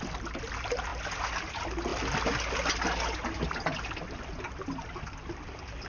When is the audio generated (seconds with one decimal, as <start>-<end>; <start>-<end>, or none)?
none